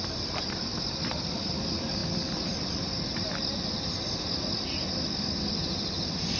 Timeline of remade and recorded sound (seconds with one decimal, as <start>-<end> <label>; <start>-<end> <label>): 0.0-6.4 recorded